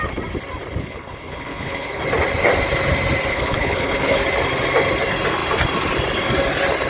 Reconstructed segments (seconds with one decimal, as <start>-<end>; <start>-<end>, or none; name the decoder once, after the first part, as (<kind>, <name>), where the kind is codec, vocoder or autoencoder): 0.8-2.0 (codec, HILCodec); 3.3-4.2